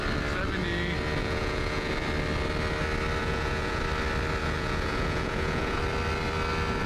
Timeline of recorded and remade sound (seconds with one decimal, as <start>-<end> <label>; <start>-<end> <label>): 0.0-1.2 recorded; 1.2-1.9 remade; 1.9-3.2 recorded; 3.2-3.8 remade; 3.8-4.4 recorded; 4.4-5.8 remade; 5.8-6.9 recorded

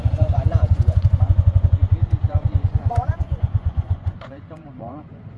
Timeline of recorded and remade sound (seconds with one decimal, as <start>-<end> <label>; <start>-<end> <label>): 0.0-5.4 remade

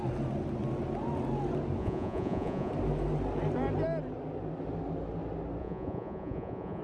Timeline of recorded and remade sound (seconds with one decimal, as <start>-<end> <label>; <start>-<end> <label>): 0.0-1.8 recorded; 1.8-2.7 remade; 2.7-5.6 recorded; 5.6-6.8 remade

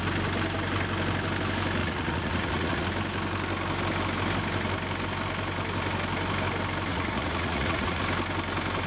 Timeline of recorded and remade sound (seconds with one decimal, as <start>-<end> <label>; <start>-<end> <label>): 0.0-1.8 recorded; 1.8-2.9 remade; 2.9-6.9 recorded; 6.9-8.0 remade; 8.0-8.9 recorded

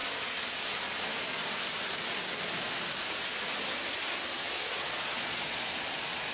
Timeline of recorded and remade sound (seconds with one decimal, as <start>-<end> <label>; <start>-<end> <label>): 0.0-4.4 recorded; 4.4-5.6 remade; 5.6-6.3 recorded

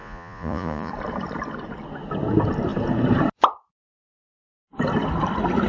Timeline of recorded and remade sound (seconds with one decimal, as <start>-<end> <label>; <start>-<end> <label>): 0.0-0.9 remade; 0.9-5.7 recorded

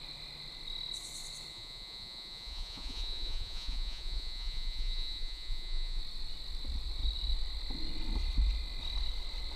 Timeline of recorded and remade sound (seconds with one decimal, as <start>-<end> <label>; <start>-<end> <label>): 0.0-1.5 recorded; 1.5-6.0 remade; 6.0-9.6 recorded

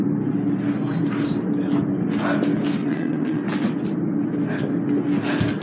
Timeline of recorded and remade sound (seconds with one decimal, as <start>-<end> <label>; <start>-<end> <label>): 0.0-2.8 recorded; 2.8-3.4 remade; 3.4-5.6 recorded